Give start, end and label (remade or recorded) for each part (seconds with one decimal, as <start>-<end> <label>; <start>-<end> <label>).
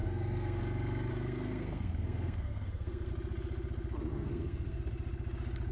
0.0-0.6 remade; 0.6-1.1 recorded; 1.1-3.1 remade; 3.1-4.1 recorded; 4.1-4.8 remade; 4.8-5.7 recorded